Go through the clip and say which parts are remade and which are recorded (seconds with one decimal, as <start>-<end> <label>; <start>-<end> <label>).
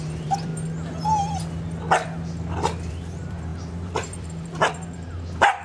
0.0-0.5 remade; 0.5-2.9 recorded; 2.9-5.6 remade